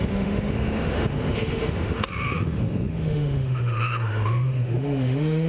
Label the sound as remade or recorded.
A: remade